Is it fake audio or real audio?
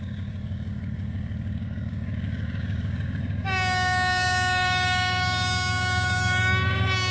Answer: fake